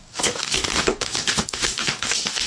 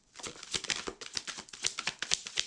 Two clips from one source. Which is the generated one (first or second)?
first